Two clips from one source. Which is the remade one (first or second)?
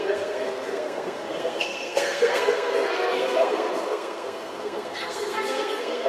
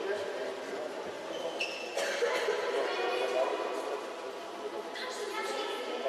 first